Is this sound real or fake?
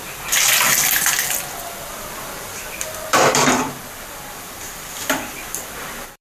fake